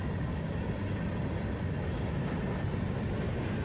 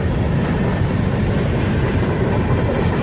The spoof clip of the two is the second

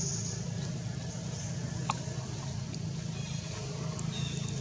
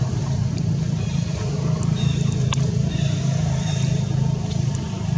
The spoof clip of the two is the second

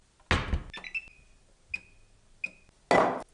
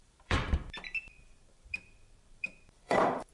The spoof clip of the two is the second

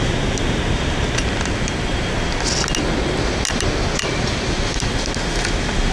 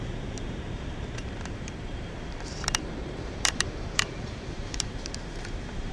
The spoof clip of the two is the second